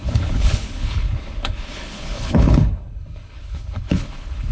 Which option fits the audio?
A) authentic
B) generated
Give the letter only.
B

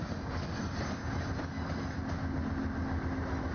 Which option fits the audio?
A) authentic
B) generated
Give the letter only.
A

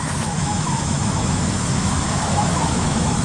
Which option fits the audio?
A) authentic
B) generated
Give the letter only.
B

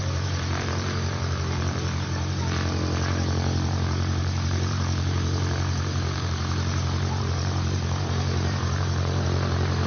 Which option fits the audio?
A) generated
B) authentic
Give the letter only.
A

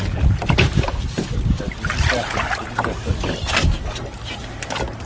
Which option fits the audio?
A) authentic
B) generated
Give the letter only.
A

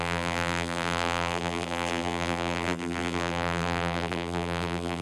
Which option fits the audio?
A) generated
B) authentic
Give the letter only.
A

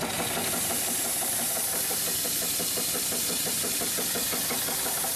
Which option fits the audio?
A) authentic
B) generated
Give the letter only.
A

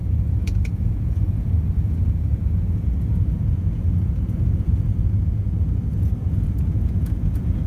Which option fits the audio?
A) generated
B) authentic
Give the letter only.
A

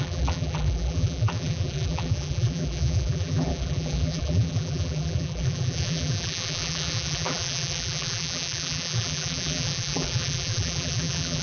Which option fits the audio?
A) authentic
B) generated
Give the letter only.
B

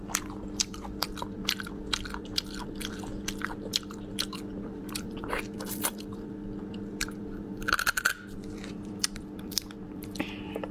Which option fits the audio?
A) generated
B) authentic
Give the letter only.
A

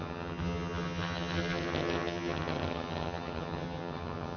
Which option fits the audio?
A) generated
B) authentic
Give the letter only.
A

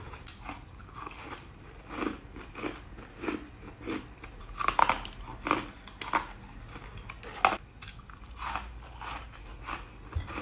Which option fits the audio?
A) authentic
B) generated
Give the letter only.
A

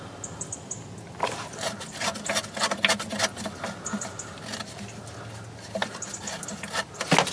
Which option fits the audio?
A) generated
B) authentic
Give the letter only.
B